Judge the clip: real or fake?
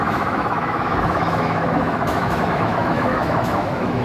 fake